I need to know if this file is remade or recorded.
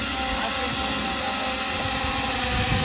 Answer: recorded